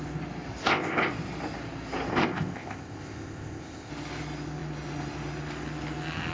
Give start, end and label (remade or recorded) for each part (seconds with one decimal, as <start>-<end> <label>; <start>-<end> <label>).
0.0-0.6 recorded; 0.6-1.1 remade; 1.1-2.1 recorded; 2.1-3.9 remade; 3.9-6.3 recorded